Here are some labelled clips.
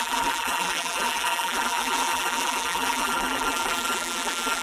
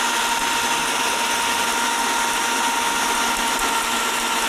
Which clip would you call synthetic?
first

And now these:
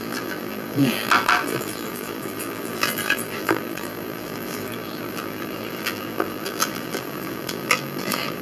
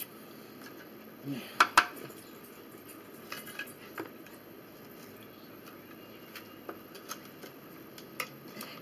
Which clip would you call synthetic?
first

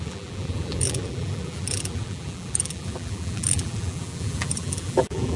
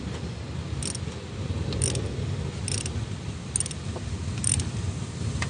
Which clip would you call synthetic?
first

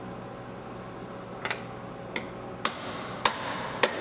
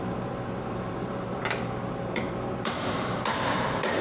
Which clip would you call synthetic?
second